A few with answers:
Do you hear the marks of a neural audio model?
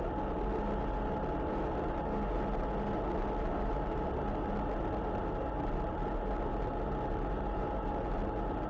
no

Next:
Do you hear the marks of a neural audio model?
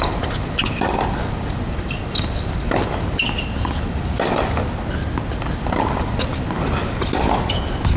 no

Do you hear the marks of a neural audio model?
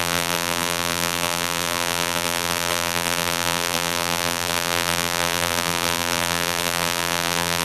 yes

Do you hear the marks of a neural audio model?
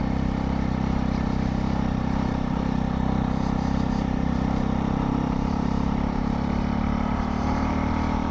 yes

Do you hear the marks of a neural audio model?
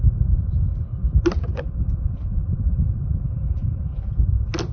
no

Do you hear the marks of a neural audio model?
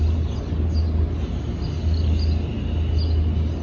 no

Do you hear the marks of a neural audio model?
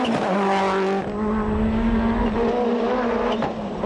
no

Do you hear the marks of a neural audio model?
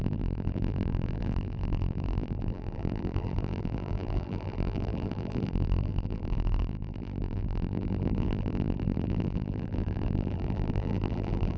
yes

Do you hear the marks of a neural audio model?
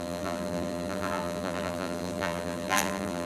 yes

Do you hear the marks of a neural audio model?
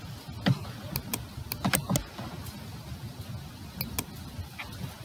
no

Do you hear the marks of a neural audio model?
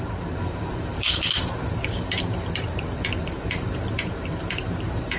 yes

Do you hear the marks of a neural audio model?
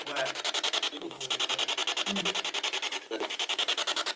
yes